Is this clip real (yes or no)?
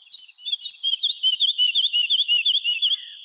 no